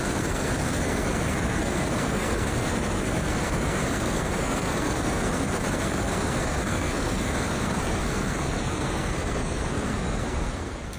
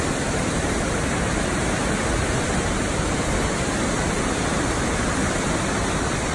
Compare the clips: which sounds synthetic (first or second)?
first